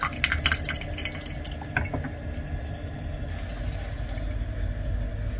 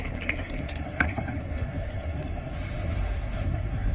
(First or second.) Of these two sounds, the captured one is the first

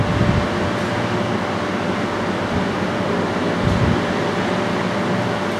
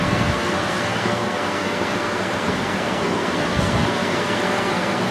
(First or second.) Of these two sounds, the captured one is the first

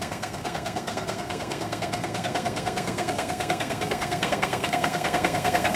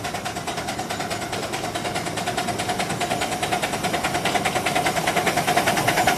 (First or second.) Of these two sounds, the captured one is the second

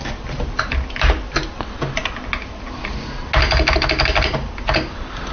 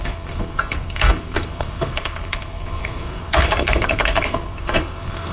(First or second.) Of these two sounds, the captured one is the first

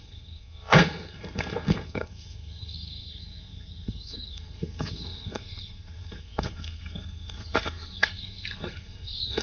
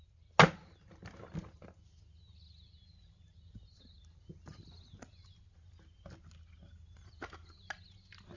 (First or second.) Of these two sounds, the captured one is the second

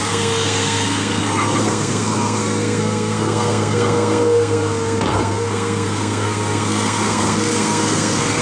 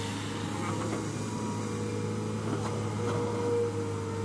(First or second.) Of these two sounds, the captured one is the second